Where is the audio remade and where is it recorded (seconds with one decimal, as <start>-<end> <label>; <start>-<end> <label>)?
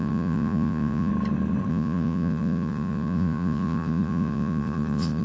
0.0-1.1 remade; 1.1-1.7 recorded; 1.7-5.2 remade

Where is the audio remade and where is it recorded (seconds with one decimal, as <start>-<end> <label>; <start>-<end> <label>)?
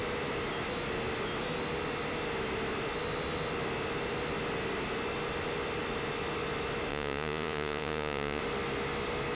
0.0-6.9 recorded; 6.9-8.4 remade; 8.4-9.3 recorded